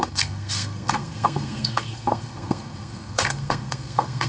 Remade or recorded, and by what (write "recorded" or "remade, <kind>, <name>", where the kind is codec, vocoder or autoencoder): remade, codec, SNAC